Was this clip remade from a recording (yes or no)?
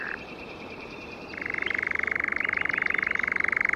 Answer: yes